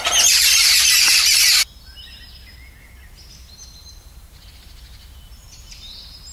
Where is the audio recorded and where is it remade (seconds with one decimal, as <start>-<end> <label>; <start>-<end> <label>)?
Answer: 0.0-1.4 remade; 1.4-4.0 recorded; 4.0-6.3 remade